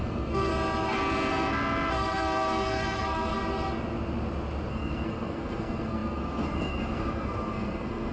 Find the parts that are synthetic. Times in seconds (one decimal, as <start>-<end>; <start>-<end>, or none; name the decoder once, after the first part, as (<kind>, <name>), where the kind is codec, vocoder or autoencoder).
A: 0.0-0.5 (codec, SNAC); 1.9-3.3; 4.7-8.1